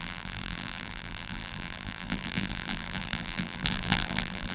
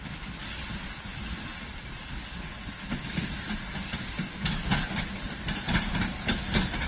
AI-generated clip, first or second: first